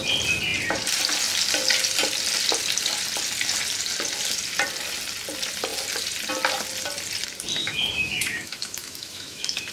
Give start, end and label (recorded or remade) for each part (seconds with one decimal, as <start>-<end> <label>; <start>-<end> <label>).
0.0-7.6 recorded; 7.6-9.7 remade